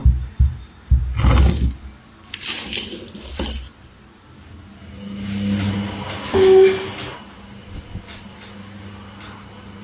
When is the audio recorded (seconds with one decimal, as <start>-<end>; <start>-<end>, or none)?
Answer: 0.0-9.8